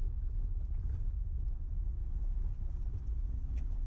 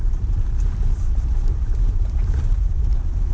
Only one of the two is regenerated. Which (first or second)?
second